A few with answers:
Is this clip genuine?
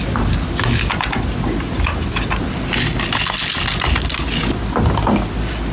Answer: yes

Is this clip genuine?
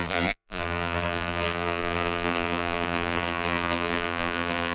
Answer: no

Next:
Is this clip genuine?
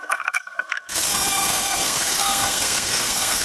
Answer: no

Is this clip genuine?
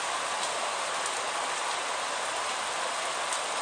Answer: yes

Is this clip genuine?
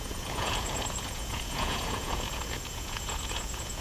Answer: no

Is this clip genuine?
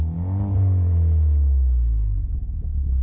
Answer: yes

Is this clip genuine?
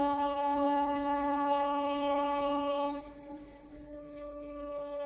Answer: no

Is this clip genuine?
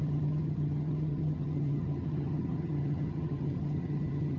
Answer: no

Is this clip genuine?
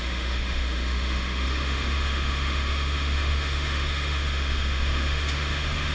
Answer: no